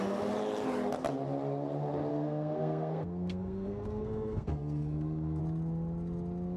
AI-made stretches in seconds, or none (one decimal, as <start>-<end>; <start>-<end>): 2.1-5.4